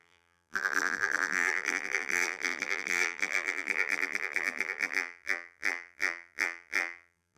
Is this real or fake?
fake